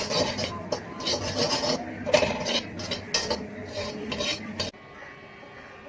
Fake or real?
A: real